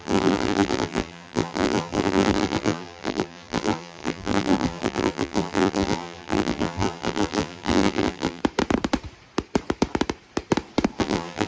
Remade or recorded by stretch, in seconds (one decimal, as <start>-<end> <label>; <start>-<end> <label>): 0.0-8.4 remade; 8.4-11.0 recorded; 11.0-11.5 remade